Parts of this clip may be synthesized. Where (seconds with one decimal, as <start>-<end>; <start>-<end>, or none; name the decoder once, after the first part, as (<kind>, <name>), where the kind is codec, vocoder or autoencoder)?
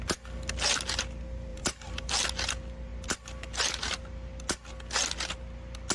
1.5-2.1 (vocoder, BigVGAN v2)